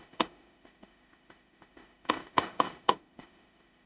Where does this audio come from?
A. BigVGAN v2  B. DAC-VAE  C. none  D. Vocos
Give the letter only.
B